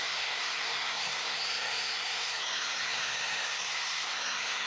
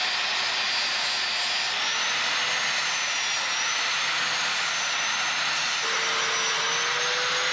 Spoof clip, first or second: first